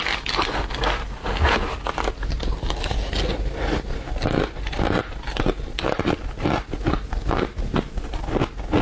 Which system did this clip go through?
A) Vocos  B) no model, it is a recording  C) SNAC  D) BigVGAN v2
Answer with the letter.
B